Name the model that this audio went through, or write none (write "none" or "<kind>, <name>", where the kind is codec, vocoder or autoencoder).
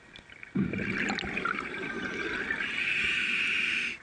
none